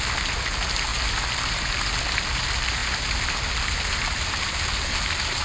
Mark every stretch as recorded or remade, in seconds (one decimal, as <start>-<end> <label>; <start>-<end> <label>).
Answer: 0.0-5.4 recorded